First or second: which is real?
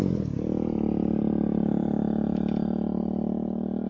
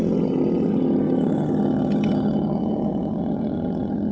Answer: first